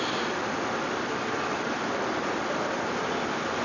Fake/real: fake